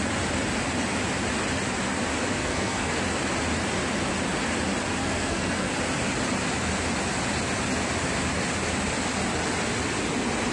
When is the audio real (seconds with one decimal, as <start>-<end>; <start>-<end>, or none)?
0.0-2.4; 3.0-5.0; 5.7-10.5